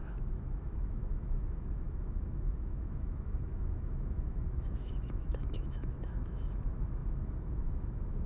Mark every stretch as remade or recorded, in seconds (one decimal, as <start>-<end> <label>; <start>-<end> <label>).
0.0-8.3 remade